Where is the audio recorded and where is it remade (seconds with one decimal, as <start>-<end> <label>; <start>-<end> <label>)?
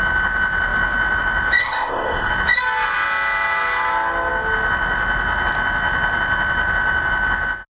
0.0-1.6 recorded; 1.6-2.3 remade; 2.3-7.8 recorded